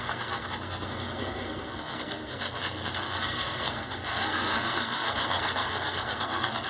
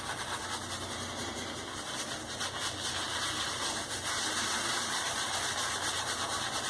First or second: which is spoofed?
first